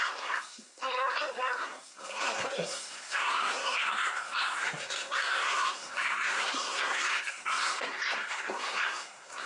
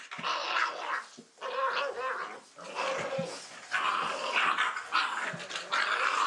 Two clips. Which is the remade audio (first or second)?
first